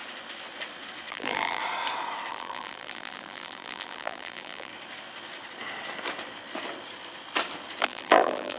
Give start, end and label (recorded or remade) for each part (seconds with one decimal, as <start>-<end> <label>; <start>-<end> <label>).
0.0-1.1 recorded; 1.1-1.6 remade; 1.6-2.3 recorded; 2.3-4.7 remade; 4.7-7.8 recorded; 7.8-8.6 remade